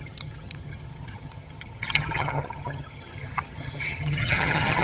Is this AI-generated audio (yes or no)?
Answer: yes